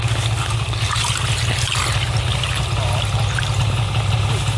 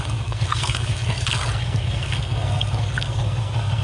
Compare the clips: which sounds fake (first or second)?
second